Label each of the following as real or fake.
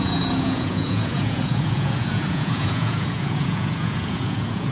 fake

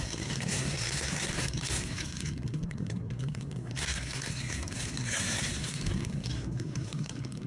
fake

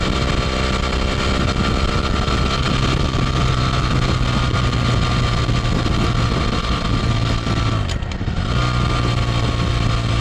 real